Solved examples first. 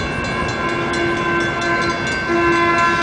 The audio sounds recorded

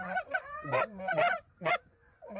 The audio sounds remade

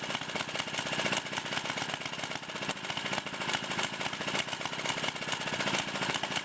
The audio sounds recorded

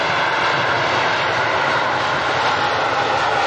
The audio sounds recorded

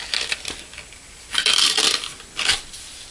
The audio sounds recorded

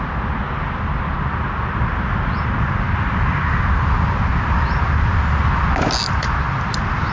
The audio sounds recorded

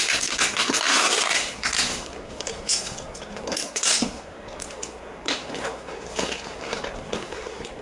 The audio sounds remade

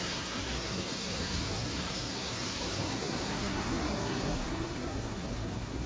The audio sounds remade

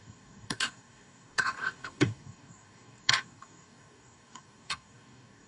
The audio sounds remade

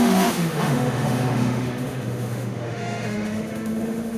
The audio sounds remade